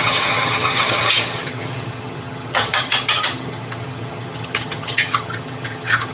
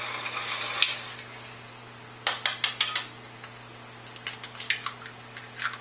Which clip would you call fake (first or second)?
first